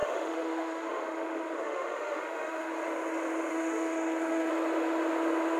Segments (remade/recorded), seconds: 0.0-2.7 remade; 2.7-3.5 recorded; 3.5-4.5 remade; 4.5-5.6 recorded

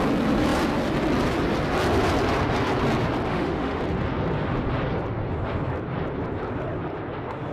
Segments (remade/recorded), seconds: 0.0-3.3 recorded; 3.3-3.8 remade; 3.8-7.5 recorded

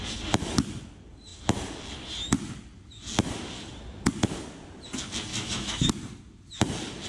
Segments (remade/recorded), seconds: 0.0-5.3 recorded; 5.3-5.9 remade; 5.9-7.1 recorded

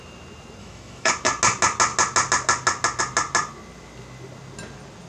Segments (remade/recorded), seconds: 0.0-0.6 recorded; 0.6-1.1 remade; 1.1-5.1 recorded